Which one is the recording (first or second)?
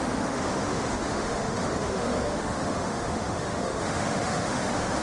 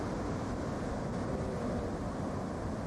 second